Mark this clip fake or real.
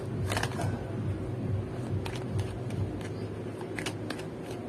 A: real